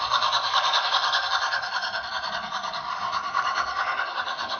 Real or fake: fake